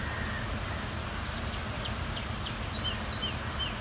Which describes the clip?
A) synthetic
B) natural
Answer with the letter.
B